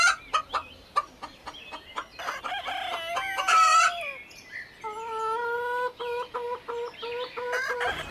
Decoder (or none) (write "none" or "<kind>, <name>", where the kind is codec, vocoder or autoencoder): none